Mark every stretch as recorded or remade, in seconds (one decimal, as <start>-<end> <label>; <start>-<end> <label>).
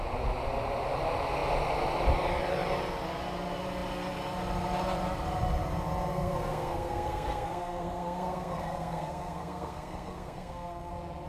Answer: 0.0-6.1 recorded; 6.1-10.9 remade; 10.9-11.3 recorded